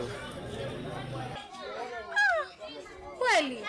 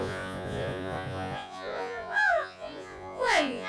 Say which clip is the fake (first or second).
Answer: second